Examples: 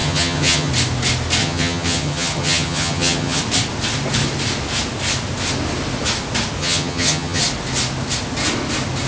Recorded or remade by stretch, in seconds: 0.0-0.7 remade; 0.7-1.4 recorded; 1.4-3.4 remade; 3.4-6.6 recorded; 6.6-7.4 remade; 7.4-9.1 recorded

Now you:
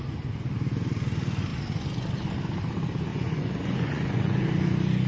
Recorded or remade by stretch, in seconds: 0.0-3.1 recorded; 3.1-4.4 remade; 4.4-5.1 recorded

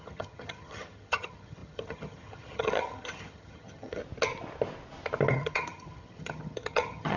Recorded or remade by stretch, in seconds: 0.0-4.0 remade; 4.0-5.3 recorded; 5.3-7.2 remade

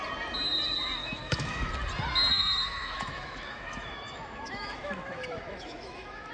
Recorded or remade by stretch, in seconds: 0.0-1.0 recorded; 1.0-1.7 remade; 1.7-2.3 recorded; 2.3-6.3 remade